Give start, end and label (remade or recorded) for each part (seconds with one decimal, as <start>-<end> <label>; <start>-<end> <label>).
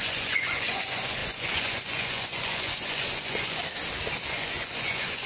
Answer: 0.0-3.6 remade; 3.6-4.3 recorded; 4.3-5.3 remade